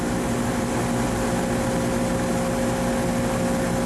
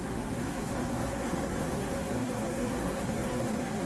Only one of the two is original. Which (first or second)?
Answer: first